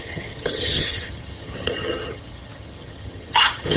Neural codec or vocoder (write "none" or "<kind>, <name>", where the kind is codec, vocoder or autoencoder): vocoder, HiFi-GAN